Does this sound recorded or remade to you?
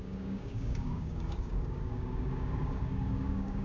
remade